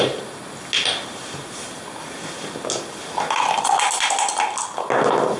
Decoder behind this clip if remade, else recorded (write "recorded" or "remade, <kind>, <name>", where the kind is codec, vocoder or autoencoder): recorded